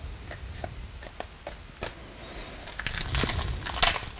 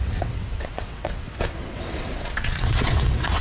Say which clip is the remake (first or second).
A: second